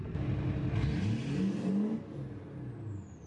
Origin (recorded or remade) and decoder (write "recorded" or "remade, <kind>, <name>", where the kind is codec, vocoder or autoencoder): recorded